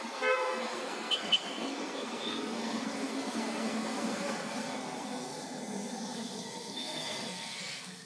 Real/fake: fake